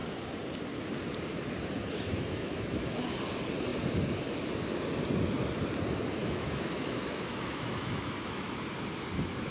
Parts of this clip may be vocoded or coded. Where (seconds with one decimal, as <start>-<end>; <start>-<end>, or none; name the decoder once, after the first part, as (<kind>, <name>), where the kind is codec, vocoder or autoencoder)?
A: 2.1-3.0 (autoencoder, DAC-VAE); 6.2-8.6

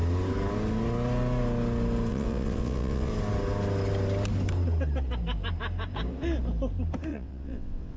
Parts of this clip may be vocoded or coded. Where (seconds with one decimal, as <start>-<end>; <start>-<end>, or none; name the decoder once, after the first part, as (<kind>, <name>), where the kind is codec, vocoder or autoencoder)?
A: 2.1-3.1 (vocoder, WaveNeXt); 7.1-8.0

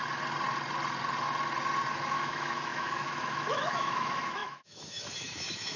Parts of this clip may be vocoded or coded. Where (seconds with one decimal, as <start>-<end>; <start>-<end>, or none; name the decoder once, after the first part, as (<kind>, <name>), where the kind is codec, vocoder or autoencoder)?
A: 1.9-5.8 (autoencoder, DAC-VAE)

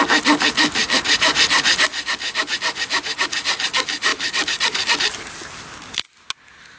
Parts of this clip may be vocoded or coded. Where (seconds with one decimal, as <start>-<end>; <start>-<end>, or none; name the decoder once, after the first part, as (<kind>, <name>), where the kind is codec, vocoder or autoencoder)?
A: 4.1-5.1 (vocoder, BigVGAN v2)

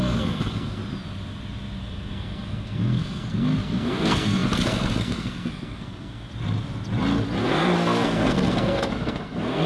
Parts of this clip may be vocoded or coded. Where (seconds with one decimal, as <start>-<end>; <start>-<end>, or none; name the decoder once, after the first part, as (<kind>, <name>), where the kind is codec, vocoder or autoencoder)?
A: 0.0-0.8 (codec, SNAC); 1.8-6.3; 7.4-9.7

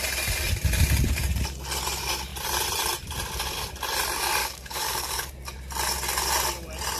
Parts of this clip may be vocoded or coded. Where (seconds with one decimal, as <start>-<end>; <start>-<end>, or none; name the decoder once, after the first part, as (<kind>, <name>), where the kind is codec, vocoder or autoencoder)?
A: 4.4-5.3 (codec, DAC)

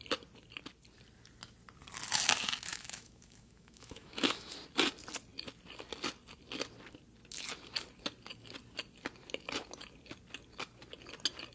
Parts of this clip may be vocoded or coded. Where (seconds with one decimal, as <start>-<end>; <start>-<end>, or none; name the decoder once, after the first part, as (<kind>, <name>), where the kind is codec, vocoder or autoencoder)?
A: 2.7-4.5 (autoencoder, DAC-VAE)